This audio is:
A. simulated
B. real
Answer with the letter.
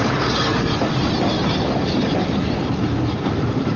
A